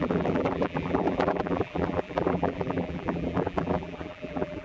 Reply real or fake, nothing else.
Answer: fake